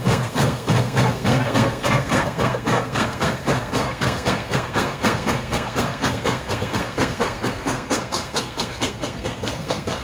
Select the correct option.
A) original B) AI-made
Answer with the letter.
B